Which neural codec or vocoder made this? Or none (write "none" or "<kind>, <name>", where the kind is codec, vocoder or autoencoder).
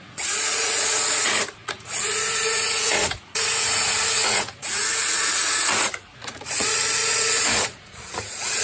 vocoder, Vocos